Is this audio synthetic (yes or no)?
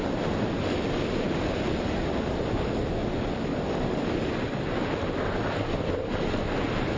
no